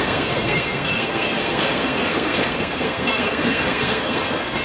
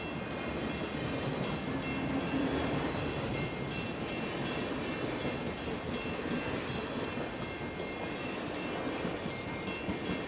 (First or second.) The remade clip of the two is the first